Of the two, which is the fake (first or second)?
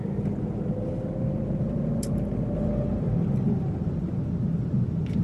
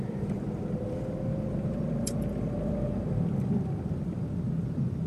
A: second